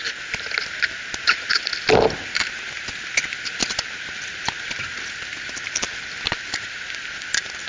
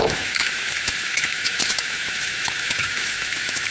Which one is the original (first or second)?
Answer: first